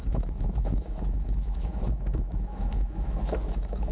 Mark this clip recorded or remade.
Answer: remade